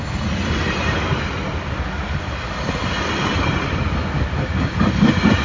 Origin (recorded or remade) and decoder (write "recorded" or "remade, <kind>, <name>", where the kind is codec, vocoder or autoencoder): recorded